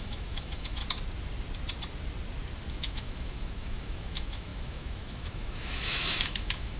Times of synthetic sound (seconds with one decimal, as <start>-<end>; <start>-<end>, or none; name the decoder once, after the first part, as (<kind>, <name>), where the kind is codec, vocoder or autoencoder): 0.0-0.8 (autoencoder, DAC-VAE); 2.7-6.8